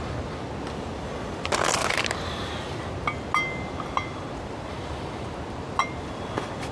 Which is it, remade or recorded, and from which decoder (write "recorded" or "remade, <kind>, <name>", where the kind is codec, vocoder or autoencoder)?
recorded